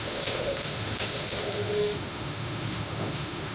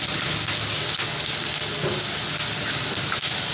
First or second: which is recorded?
second